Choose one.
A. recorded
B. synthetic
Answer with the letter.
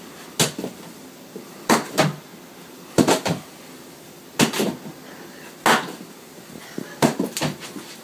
A